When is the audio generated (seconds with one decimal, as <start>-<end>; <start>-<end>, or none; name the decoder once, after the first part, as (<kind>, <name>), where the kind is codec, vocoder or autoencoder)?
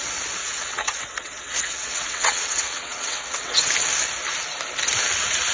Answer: 0.4-3.7 (vocoder, WaveNeXt)